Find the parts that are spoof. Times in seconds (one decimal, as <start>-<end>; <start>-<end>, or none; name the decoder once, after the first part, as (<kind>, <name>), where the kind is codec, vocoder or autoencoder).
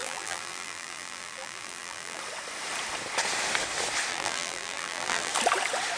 0.0-2.2 (vocoder, BigVGAN v2); 4.1-5.3